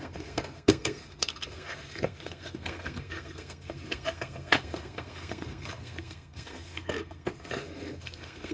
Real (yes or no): no